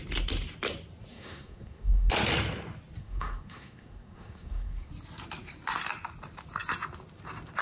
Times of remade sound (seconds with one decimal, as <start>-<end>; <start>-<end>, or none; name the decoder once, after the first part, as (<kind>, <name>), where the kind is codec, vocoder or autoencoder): 1.1-2.1 (codec, SNAC); 3.0-4.9